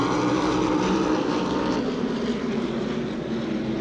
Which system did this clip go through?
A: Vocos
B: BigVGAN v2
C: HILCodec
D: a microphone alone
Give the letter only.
B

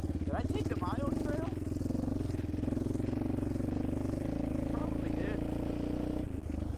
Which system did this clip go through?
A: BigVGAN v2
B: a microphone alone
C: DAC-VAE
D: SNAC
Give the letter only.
B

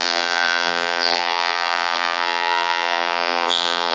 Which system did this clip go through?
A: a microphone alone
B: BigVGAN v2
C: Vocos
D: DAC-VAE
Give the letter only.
B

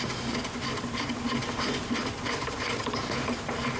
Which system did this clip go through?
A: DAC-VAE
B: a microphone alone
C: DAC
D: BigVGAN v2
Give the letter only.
B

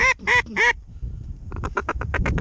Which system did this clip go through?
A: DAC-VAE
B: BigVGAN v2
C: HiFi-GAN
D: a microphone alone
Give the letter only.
B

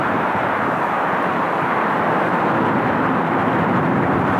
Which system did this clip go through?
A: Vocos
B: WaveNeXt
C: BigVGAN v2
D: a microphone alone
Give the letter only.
C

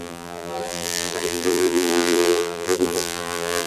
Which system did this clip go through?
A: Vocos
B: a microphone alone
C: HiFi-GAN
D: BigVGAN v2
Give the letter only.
D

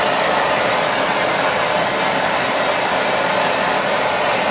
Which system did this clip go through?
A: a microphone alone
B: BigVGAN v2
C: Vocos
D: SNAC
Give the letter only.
B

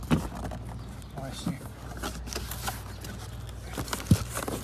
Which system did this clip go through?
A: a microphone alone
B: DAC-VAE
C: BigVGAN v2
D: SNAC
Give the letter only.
A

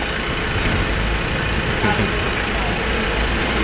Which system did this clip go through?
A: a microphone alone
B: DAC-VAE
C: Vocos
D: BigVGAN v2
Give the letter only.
D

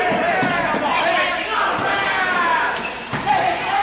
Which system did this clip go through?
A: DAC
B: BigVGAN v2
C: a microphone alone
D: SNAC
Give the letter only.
C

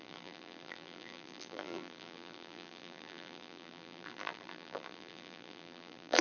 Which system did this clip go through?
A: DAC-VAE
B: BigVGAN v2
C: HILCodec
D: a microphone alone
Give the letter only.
B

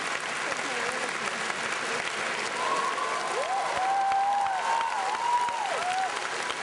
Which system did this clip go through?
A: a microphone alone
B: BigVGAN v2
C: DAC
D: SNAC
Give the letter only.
A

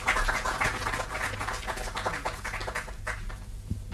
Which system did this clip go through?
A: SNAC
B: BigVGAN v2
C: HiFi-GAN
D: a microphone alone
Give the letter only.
D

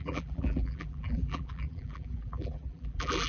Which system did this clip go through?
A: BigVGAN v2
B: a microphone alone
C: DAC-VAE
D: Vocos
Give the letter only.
A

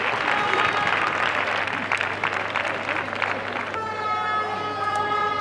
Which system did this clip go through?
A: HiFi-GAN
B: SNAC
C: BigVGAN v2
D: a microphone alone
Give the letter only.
D